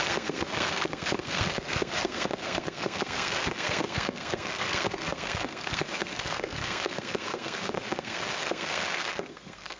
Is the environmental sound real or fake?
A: fake